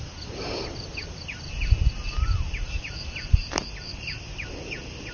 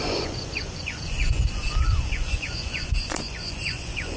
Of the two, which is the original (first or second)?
first